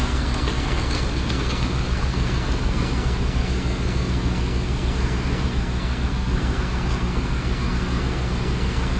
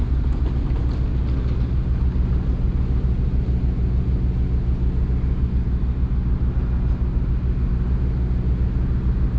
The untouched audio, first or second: second